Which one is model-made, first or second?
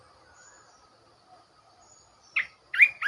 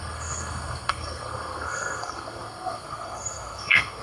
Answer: second